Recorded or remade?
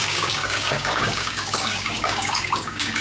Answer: remade